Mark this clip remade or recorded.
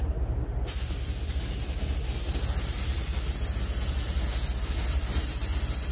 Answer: recorded